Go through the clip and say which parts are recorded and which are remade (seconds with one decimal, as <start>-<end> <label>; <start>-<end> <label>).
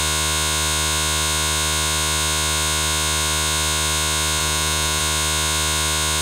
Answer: 0.0-4.4 recorded; 4.4-5.0 remade; 5.0-6.2 recorded